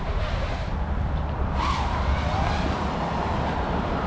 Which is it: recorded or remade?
recorded